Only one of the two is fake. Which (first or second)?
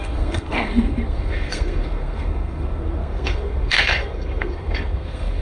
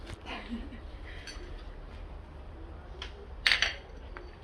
first